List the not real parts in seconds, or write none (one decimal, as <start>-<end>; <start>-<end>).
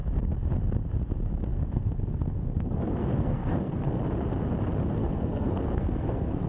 1.5-4.0; 5.0-6.5